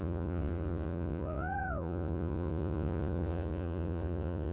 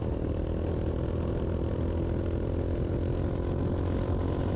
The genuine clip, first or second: second